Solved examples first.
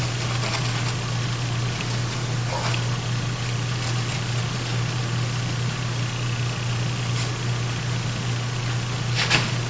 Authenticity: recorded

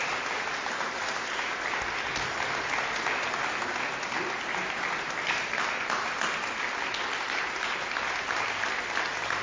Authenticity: recorded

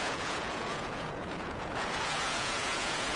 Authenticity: remade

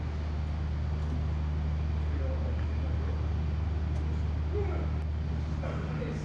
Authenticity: recorded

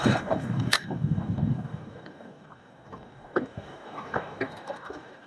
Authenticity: remade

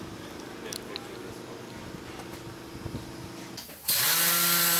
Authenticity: recorded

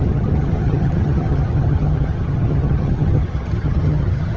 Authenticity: remade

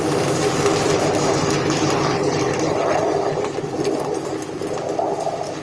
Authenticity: recorded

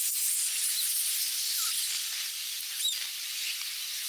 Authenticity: recorded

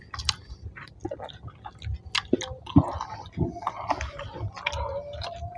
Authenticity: recorded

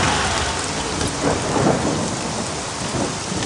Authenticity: recorded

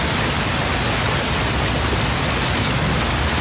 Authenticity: recorded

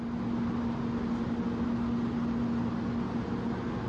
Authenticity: recorded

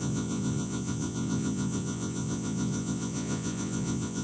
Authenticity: remade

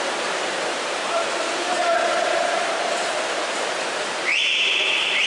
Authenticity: remade